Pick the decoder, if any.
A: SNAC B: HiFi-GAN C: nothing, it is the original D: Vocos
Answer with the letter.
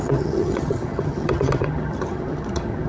B